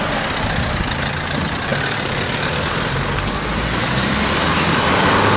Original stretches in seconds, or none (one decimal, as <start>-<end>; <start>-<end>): 0.0-1.7; 4.9-5.4